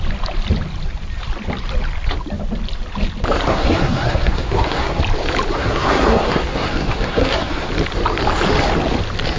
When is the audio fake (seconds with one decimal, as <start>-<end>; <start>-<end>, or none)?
3.5-5.0; 5.5-7.7